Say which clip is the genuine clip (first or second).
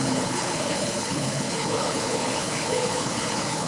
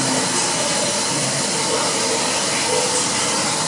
second